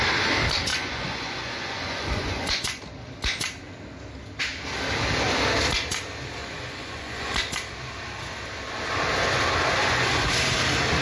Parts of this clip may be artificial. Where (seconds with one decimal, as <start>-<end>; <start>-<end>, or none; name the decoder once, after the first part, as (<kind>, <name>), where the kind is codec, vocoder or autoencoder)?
0.7-2.8 (vocoder, Vocos); 6.4-7.3; 9.8-10.3